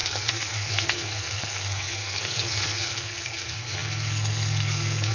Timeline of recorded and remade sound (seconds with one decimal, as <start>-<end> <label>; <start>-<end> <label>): 0.0-5.1 remade